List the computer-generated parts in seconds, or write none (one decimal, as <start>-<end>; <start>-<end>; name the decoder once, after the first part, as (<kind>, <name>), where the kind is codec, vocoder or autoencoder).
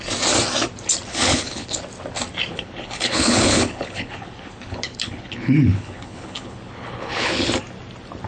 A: 1.1-1.8 (codec, HILCodec); 2.5-7.5